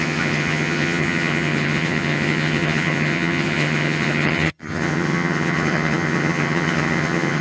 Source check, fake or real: fake